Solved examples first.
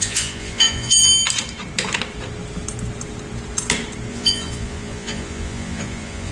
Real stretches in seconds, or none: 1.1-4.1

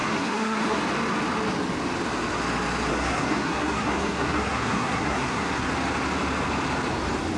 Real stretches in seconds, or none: 0.8-2.9; 5.7-7.4